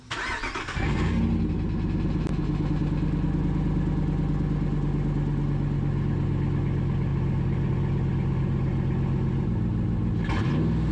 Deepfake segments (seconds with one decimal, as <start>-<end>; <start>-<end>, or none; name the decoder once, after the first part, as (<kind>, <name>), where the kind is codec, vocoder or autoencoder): 0.6-1.2 (codec, SNAC)